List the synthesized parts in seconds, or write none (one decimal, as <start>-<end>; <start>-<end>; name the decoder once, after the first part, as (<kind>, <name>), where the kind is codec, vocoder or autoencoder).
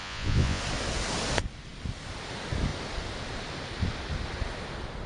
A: 0.0-0.6 (vocoder, Vocos)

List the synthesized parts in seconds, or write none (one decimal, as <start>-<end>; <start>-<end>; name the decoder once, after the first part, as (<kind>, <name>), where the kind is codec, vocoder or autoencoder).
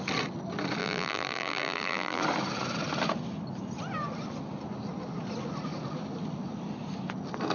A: 0.8-2.2 (vocoder, BigVGAN v2)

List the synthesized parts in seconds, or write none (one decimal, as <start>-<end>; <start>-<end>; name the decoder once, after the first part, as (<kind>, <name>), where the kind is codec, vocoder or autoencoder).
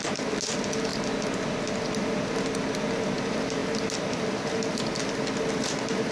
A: none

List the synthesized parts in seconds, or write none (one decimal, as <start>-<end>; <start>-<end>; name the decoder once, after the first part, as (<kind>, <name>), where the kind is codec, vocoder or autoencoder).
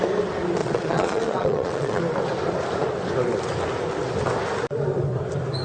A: 0.6-2.0 (vocoder, Vocos)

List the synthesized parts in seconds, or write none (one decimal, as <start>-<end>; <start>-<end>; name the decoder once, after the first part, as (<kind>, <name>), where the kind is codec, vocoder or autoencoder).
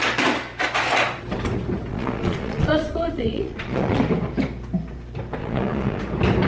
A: 1.9-4.0 (vocoder, Vocos); 5.4-6.0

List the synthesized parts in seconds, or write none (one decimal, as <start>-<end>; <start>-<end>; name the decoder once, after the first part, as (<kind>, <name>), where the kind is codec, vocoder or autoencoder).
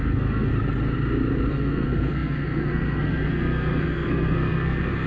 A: 0.0-0.5 (codec, SNAC); 1.5-5.1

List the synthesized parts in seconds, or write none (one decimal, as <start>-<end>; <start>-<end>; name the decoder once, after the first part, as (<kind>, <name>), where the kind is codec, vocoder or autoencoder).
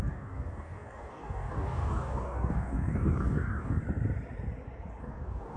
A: 0.0-3.8 (codec, DAC); 5.0-5.6